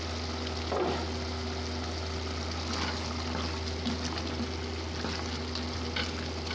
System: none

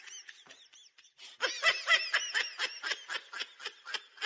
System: none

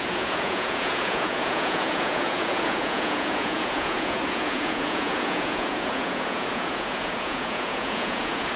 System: vocoder, Vocos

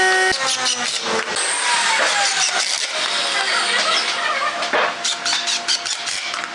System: none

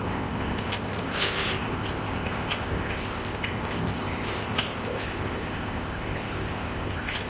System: codec, ZipCodec